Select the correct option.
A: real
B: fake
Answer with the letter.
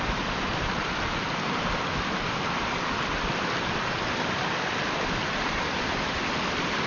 A